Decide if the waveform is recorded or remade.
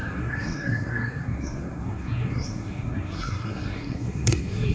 remade